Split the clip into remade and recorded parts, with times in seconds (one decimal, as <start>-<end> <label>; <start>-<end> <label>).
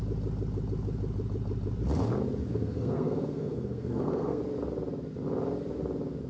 0.0-2.5 recorded; 2.5-4.4 remade; 4.4-6.3 recorded